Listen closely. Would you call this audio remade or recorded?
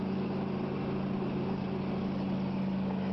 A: recorded